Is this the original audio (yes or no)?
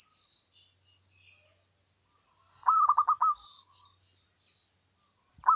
yes